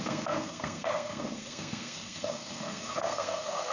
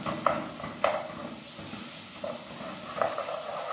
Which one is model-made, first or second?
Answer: first